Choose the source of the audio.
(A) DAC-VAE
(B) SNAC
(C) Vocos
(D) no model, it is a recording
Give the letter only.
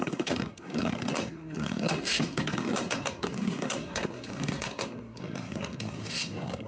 B